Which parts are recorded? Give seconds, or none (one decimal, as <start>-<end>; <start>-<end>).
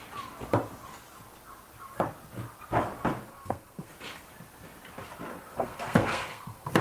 0.0-3.3; 3.9-5.3